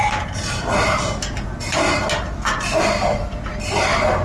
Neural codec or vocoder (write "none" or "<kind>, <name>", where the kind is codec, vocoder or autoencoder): none